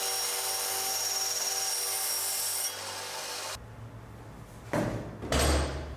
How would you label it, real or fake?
real